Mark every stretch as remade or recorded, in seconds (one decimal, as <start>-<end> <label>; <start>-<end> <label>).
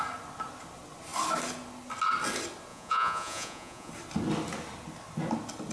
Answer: 0.0-2.7 recorded; 2.7-3.9 remade; 3.9-5.7 recorded